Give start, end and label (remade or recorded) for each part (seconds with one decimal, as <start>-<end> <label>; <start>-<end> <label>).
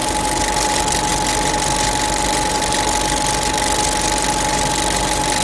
0.0-5.4 recorded